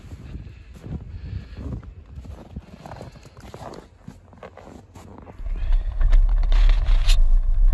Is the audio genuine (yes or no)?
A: yes